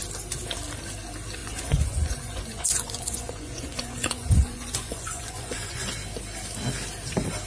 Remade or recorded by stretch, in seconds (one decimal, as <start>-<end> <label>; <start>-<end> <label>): 0.0-1.4 recorded; 1.4-5.9 remade; 5.9-7.5 recorded